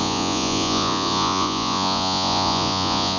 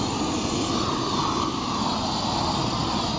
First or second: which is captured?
second